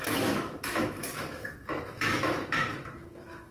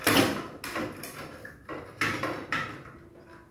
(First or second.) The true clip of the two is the second